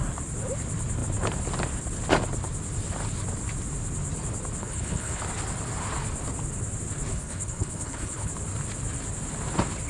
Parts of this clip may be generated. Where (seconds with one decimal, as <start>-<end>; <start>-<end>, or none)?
4.6-5.2; 7.1-8.3